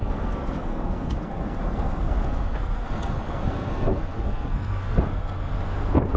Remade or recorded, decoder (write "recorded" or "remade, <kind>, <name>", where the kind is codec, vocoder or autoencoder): remade, codec, SNAC